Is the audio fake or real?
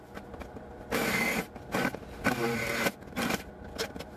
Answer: real